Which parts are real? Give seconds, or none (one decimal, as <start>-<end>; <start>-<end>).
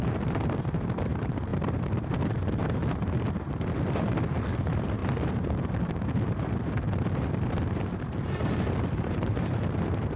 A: none